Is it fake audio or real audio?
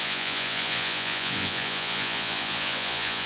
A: fake